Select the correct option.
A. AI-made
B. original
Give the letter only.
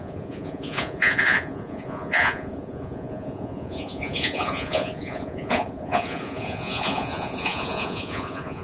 A